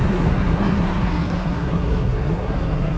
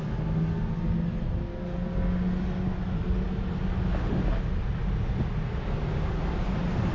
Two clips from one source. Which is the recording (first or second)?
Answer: second